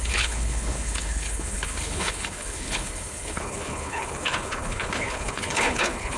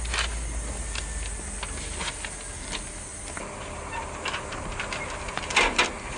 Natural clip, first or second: second